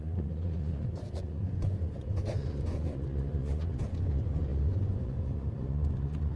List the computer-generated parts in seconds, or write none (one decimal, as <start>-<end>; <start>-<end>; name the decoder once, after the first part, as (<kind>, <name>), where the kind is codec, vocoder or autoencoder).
0.0-6.4 (vocoder, Vocos)